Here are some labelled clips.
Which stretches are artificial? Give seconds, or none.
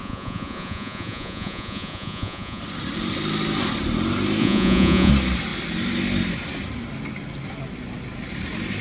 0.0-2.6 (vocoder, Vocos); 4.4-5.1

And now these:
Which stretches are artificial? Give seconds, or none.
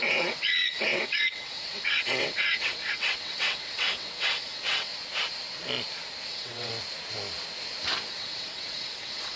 0.0-4.9 (vocoder, WaveNeXt); 6.3-6.7; 8.1-9.4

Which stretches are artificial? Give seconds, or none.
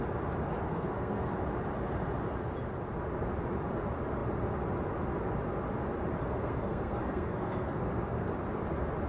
0.7-1.3 (codec, SNAC); 6.3-8.3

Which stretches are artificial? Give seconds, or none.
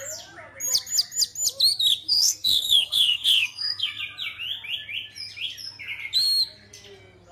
2.1-4.0 (codec, SNAC)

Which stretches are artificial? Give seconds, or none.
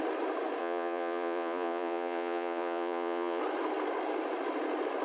0.6-3.4 (vocoder, Vocos)